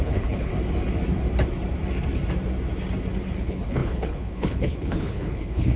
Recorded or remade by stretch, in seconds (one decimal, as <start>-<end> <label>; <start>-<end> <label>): 0.0-0.5 remade; 0.5-3.4 recorded; 3.4-5.8 remade